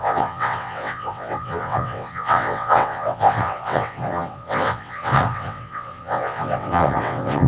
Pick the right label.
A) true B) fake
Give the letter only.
B